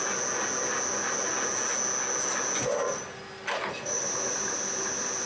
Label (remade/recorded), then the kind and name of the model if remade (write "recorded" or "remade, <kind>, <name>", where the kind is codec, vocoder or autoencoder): recorded